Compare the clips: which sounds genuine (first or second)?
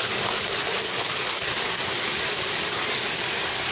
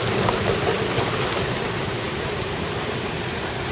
second